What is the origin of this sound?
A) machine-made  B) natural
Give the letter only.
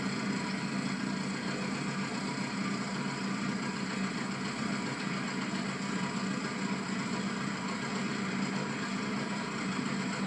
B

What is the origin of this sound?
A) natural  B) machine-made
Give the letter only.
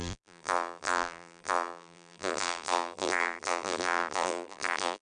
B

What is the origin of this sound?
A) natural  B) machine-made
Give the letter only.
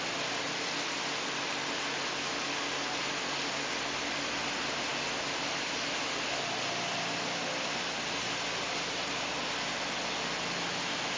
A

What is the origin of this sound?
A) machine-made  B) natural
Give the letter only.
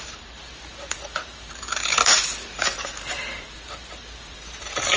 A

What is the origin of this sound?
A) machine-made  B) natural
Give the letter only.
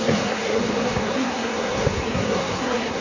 A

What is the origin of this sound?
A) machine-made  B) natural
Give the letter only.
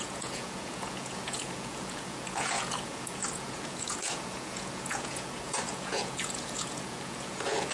A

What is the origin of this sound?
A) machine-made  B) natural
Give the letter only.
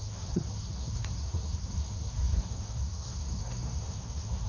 A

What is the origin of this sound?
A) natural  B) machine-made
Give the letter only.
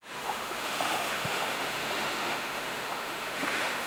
B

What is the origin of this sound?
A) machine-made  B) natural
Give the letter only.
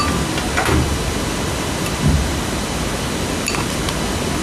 B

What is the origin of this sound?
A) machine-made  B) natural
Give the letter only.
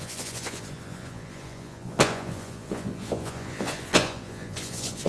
A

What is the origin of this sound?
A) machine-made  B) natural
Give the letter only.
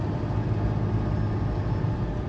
B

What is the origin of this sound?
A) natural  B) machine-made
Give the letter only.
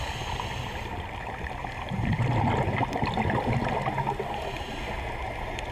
A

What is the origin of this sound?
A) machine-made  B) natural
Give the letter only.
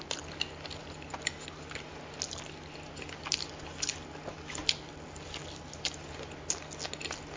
B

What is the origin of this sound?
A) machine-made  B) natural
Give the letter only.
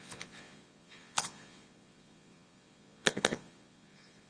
A